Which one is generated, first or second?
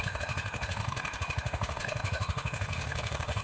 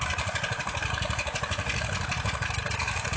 first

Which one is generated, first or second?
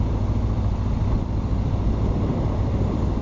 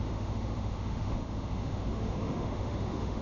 second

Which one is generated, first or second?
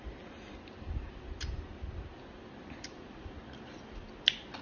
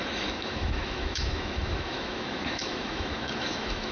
second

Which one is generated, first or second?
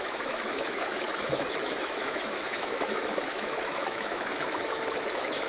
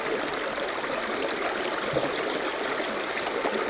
first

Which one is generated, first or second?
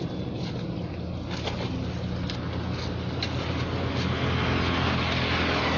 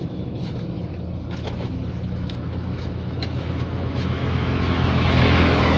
second